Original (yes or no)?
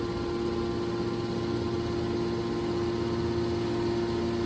yes